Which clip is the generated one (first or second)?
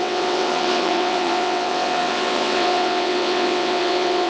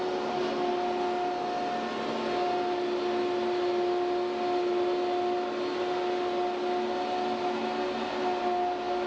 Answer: first